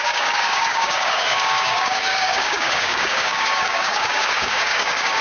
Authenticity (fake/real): fake